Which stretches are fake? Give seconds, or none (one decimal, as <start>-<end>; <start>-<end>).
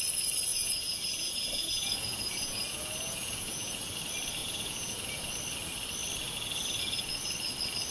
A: 0.5-3.9; 4.4-5.3